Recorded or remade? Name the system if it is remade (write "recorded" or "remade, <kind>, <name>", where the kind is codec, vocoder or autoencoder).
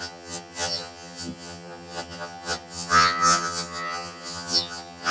remade, vocoder, HiFi-GAN